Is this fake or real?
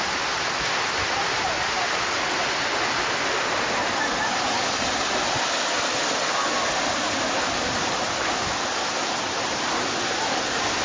real